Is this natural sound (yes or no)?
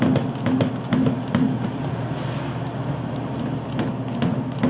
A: yes